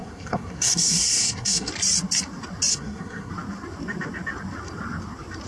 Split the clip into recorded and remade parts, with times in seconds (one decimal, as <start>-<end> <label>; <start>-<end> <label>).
0.0-1.7 remade; 1.7-2.7 recorded; 2.7-3.3 remade; 3.3-5.5 recorded